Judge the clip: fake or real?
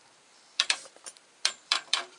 fake